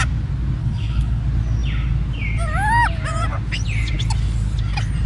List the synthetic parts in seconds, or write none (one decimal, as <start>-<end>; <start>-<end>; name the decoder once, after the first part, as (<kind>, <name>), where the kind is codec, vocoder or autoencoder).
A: 0.6-1.2 (codec, HILCodec)